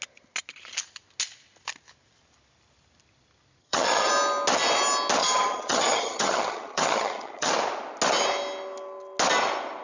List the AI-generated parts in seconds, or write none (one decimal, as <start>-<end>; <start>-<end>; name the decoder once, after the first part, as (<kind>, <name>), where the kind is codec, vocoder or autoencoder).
3.6-4.1 (vocoder, HiFi-GAN); 5.2-7.5